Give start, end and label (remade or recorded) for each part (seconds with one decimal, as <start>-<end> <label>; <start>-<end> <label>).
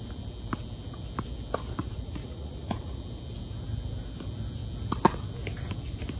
0.0-1.8 recorded; 1.8-3.0 remade; 3.0-6.2 recorded